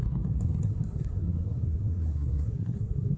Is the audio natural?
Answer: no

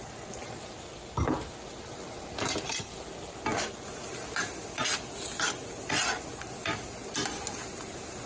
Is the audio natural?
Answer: yes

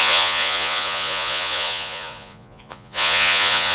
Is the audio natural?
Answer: no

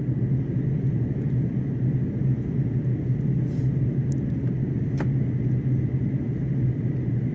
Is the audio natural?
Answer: yes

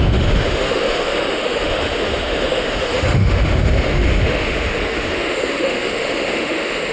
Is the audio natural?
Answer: no